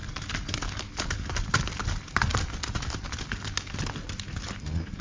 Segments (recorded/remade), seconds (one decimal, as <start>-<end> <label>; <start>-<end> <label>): 0.0-2.3 recorded; 2.3-3.3 remade; 3.3-5.0 recorded